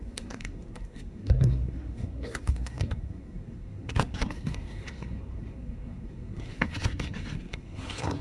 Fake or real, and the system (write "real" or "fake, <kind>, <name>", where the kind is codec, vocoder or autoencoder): fake, codec, SNAC